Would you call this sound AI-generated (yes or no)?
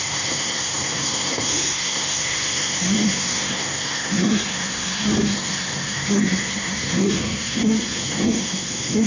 yes